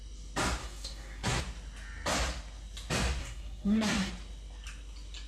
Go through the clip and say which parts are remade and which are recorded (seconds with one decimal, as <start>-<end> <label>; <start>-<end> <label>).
0.0-0.6 recorded; 0.6-1.4 remade; 1.4-3.2 recorded; 3.2-4.1 remade; 4.1-5.3 recorded